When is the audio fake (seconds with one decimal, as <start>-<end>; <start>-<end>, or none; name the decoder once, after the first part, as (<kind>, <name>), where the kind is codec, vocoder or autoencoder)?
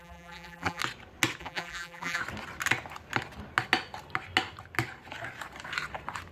0.0-0.8 (vocoder, BigVGAN v2); 1.4-2.2